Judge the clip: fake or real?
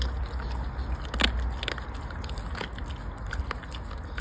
real